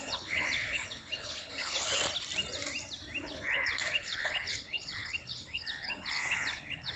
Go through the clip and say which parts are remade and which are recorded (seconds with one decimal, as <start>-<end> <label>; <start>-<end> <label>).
0.0-2.0 remade; 2.0-3.2 recorded; 3.2-7.0 remade